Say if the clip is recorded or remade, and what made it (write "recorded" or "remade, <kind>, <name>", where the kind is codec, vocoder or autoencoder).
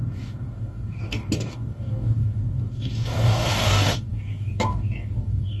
remade, codec, DAC